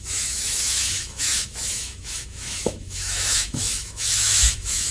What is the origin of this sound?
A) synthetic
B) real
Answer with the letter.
A